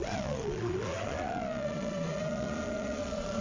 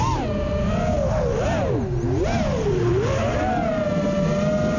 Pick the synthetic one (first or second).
first